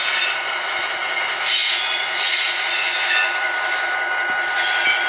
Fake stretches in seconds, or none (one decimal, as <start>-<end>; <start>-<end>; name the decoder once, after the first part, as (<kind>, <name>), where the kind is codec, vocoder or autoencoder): none